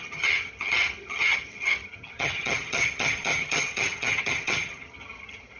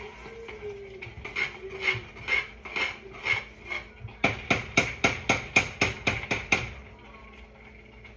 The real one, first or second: second